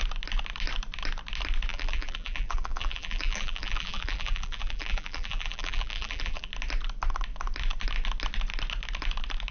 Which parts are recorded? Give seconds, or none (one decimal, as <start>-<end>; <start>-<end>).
0.0-1.7; 6.5-9.5